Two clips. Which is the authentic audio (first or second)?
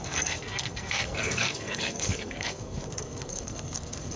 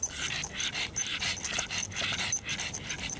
second